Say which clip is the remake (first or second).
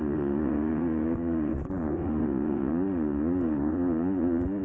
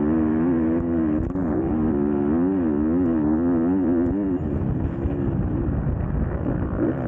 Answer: first